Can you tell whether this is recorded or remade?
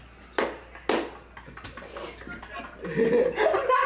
recorded